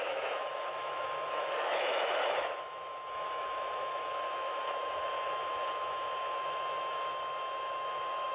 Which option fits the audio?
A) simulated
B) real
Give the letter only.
A